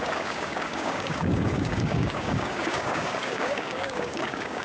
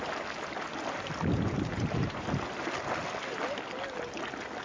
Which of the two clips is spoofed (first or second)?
first